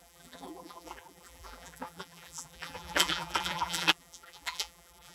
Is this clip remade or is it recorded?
remade